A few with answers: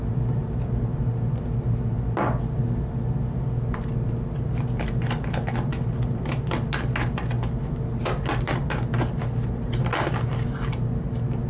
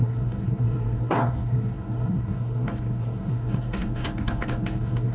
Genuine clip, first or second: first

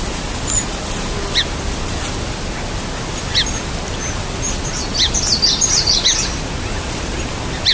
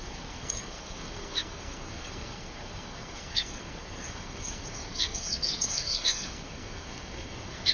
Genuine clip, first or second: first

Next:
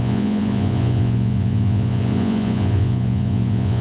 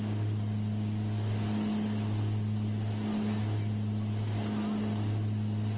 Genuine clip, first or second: second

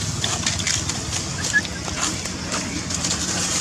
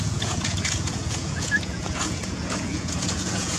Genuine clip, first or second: first